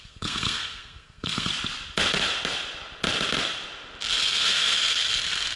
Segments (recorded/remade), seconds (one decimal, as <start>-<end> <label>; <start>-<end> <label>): 0.0-1.5 remade; 1.5-4.1 recorded; 4.1-5.6 remade